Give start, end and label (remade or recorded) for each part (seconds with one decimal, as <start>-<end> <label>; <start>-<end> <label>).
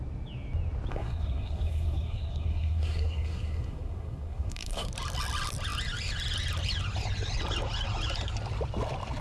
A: 0.0-0.9 recorded; 0.9-4.9 remade; 4.9-9.2 recorded